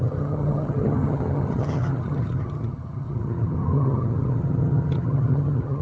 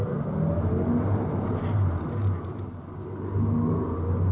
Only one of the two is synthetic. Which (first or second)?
first